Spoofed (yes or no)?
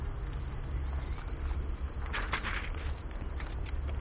no